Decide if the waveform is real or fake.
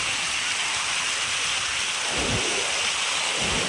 real